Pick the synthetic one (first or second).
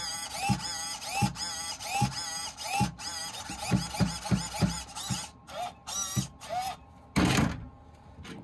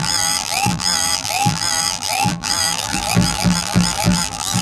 second